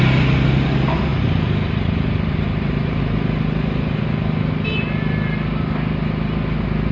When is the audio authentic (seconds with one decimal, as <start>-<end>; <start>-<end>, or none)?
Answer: 0.0-1.1; 3.0-6.9